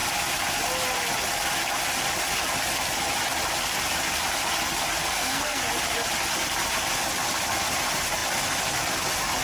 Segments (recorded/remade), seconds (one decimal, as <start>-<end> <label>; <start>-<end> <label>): 0.0-5.0 recorded; 5.0-5.6 remade; 5.6-9.4 recorded